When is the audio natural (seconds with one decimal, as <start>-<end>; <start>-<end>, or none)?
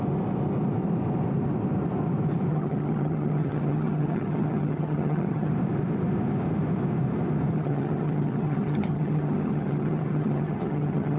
0.0-2.5; 5.5-7.5